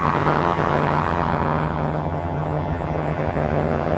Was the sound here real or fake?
fake